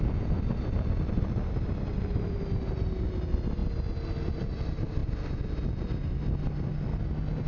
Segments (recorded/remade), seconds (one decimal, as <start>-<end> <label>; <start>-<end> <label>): 0.0-7.5 recorded